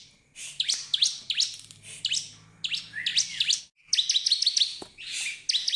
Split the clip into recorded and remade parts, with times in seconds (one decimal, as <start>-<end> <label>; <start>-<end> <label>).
0.0-5.8 recorded